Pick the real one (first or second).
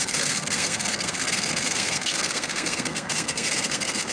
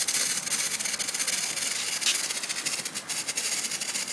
second